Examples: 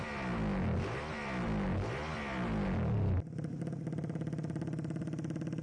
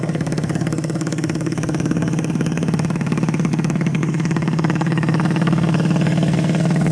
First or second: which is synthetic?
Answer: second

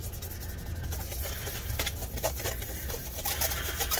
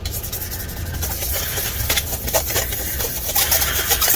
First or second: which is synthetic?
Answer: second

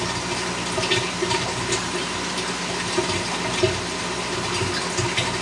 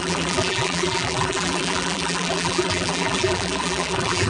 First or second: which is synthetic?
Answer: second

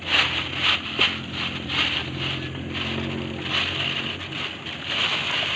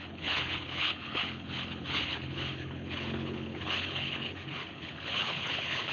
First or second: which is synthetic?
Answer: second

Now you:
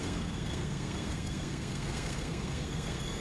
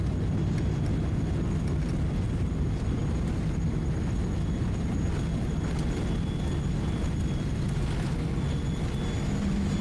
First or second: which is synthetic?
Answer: first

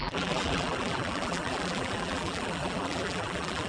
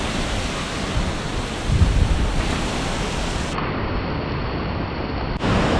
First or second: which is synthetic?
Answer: first